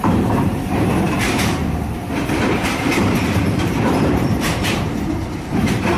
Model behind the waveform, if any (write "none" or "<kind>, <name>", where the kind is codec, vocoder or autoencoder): vocoder, BigVGAN v2